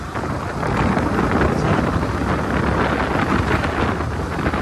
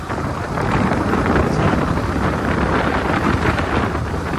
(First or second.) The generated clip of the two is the second